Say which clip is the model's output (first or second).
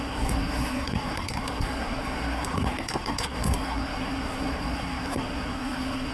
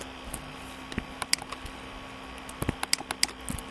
first